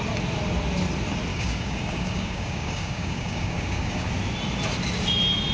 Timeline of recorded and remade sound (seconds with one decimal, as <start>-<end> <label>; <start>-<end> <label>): 0.0-1.3 recorded; 1.3-4.1 remade; 4.1-5.5 recorded